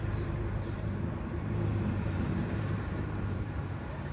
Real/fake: fake